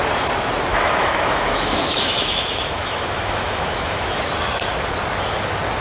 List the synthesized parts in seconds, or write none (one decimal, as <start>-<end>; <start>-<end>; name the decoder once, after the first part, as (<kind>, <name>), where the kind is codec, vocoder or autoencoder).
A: 0.7-4.2 (autoencoder, DAC-VAE)